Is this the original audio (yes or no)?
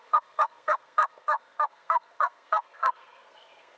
no